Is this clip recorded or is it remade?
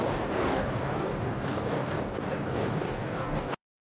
remade